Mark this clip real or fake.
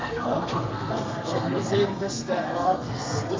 fake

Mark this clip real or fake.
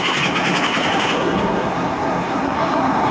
fake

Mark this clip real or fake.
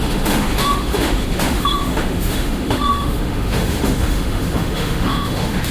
fake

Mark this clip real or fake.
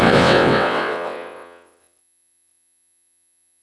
fake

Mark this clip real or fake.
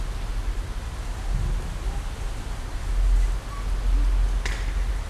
real